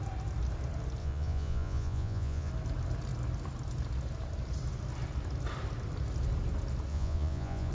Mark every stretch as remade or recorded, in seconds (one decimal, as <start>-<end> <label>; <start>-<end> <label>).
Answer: 0.0-1.0 recorded; 1.0-2.5 remade; 2.5-6.9 recorded; 6.9-7.7 remade